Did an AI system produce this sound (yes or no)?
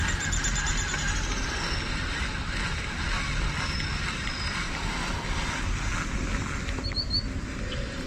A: no